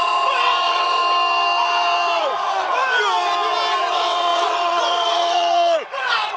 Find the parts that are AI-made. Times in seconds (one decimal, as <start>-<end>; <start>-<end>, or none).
0.0-1.0; 2.2-2.8; 3.9-6.4